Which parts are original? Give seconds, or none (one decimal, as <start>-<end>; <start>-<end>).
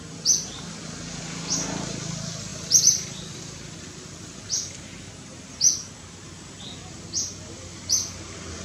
0.0-2.5; 3.6-8.6